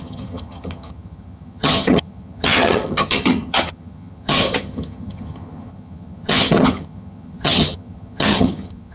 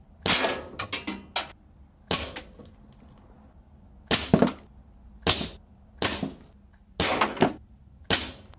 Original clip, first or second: second